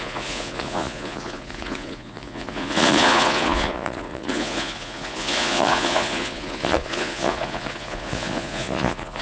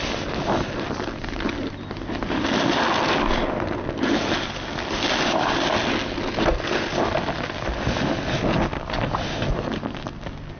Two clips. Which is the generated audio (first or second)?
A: first